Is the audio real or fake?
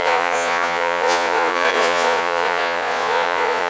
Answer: fake